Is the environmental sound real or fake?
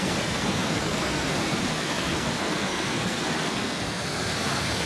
fake